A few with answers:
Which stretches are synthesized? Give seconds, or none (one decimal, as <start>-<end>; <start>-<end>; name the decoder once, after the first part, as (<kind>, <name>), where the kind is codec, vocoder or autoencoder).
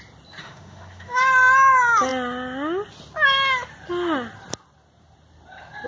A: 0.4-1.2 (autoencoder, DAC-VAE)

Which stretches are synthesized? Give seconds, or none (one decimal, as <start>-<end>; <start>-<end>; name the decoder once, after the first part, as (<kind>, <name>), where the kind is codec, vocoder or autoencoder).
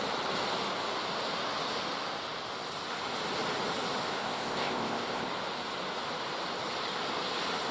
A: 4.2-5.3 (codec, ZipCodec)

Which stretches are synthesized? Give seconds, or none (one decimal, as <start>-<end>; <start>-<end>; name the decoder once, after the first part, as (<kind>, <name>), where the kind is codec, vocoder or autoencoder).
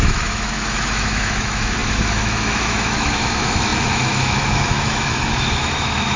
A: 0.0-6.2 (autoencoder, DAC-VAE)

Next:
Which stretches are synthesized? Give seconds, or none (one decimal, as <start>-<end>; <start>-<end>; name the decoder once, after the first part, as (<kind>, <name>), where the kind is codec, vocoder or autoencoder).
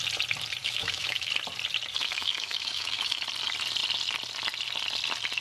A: 0.6-1.3 (autoencoder, DAC-VAE); 2.0-3.2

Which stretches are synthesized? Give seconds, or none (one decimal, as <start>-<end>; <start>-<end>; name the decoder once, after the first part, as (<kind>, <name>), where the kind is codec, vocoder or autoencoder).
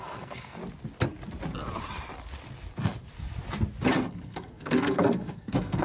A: 0.0-0.6 (codec, SNAC); 4.1-5.8